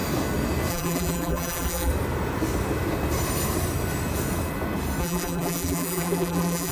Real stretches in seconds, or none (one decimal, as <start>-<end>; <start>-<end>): 0.0-0.7; 1.9-5.0